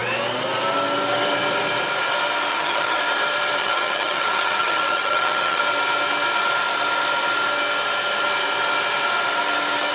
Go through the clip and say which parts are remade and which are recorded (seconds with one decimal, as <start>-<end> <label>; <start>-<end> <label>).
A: 0.0-2.5 recorded; 2.5-3.0 remade; 3.0-3.6 recorded; 3.6-5.6 remade; 5.6-9.9 recorded